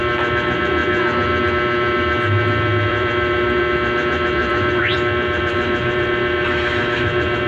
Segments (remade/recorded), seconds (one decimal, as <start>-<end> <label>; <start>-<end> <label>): 0.0-2.9 recorded; 2.9-3.6 remade; 3.6-4.4 recorded; 4.4-6.0 remade; 6.0-7.5 recorded